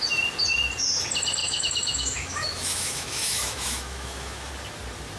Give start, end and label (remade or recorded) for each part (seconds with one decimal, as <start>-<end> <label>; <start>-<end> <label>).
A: 0.0-1.4 recorded; 1.4-4.5 remade; 4.5-5.2 recorded